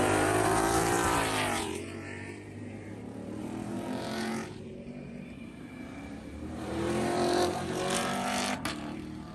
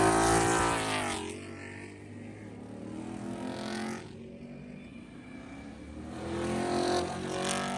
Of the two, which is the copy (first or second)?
first